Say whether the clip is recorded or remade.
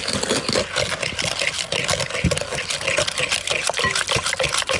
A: recorded